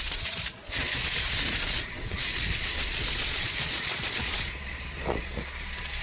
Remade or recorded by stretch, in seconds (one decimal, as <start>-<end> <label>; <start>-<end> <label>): 0.0-6.0 remade